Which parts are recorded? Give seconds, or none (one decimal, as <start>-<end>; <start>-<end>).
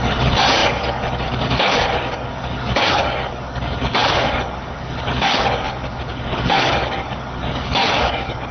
none